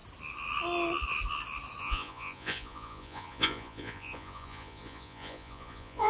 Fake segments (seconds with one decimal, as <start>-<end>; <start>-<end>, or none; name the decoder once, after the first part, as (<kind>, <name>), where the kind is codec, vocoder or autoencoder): 1.8-6.1 (vocoder, Vocos)